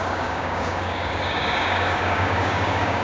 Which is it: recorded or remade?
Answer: remade